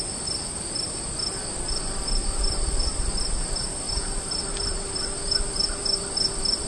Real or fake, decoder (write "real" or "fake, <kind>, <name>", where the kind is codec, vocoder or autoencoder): real